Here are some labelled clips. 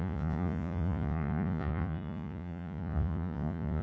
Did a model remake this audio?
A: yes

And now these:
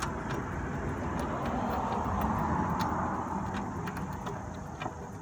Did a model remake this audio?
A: no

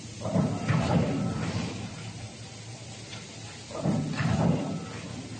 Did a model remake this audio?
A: no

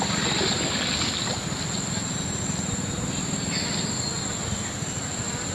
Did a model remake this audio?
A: no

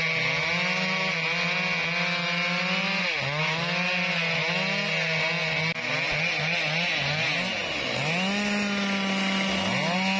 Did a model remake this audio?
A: no